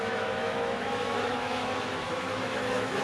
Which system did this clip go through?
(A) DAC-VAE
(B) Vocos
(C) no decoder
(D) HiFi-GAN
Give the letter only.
A